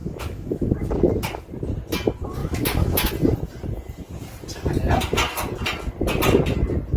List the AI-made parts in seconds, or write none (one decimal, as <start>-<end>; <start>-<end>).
0.0-0.9; 2.4-3.1